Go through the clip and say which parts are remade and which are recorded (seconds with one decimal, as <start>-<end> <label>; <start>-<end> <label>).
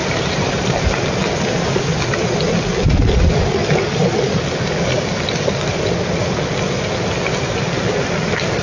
0.0-0.8 remade; 0.8-8.6 recorded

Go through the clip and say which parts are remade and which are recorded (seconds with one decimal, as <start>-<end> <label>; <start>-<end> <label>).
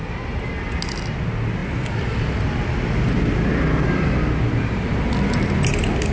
0.0-6.1 recorded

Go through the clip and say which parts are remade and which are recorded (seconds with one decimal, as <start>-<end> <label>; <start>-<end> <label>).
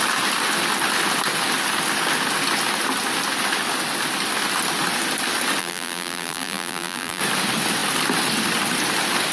0.0-5.6 recorded; 5.6-7.2 remade; 7.2-9.3 recorded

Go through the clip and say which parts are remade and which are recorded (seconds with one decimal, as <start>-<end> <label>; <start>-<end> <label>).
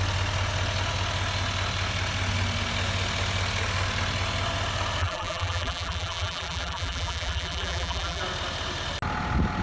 0.0-5.0 recorded; 5.0-8.2 remade; 8.2-9.6 recorded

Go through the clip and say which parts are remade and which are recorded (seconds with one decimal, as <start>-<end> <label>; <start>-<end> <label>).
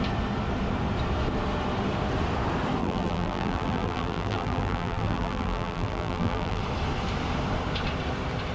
0.0-2.8 recorded; 2.8-6.6 remade; 6.6-8.5 recorded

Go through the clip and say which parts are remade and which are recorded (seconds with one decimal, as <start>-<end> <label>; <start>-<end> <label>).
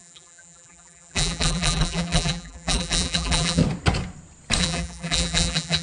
0.0-3.6 remade; 3.6-4.6 recorded; 4.6-5.8 remade